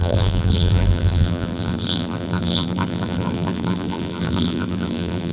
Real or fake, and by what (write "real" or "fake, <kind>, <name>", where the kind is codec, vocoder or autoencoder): fake, vocoder, BigVGAN v2